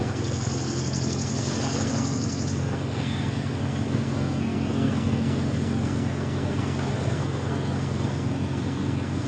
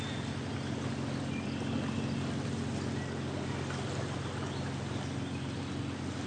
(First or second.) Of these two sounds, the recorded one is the second